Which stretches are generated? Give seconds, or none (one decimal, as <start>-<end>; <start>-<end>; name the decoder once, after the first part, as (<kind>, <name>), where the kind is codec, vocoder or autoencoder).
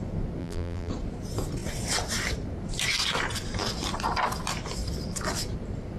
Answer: 0.4-0.9 (vocoder, BigVGAN v2)